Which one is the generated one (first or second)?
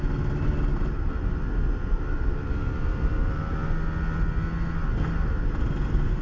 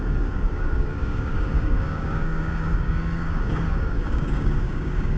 second